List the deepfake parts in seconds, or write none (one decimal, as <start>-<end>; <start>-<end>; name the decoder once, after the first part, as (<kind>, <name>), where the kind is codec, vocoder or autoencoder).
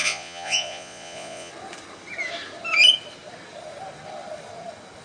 0.0-1.5 (vocoder, Vocos)